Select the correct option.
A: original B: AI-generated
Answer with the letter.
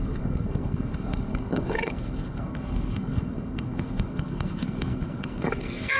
B